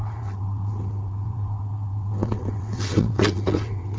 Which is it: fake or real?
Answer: fake